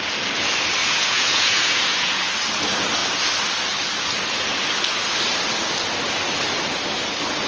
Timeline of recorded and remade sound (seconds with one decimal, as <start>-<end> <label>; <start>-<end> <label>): 0.0-0.8 recorded; 0.8-2.3 remade; 2.3-7.5 recorded